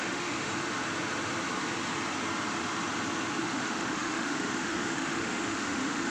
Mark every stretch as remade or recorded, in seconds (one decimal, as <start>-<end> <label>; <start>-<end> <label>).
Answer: 0.0-0.5 remade; 0.5-3.4 recorded; 3.4-6.1 remade